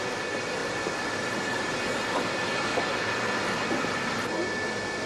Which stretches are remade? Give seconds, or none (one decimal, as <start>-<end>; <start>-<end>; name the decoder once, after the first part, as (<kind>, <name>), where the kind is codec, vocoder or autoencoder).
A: none

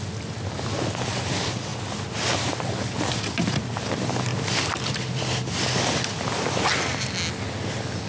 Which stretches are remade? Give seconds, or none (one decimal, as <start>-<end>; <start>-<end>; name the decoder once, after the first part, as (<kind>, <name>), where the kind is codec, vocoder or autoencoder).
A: 4.3-4.9 (vocoder, BigVGAN v2)